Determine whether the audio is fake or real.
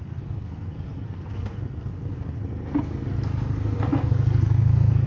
fake